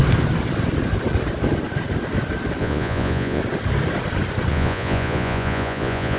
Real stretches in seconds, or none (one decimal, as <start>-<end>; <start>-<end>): 0.0-2.6; 3.4-4.5